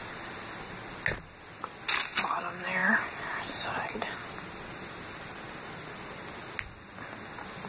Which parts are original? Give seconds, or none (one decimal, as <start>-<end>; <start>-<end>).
0.0-2.8; 3.4-7.7